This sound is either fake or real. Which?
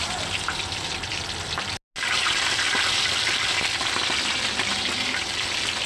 real